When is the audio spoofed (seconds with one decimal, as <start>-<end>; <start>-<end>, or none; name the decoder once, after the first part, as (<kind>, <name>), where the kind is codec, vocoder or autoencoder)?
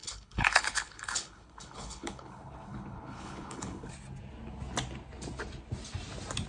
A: 0.0-3.9 (codec, HILCodec)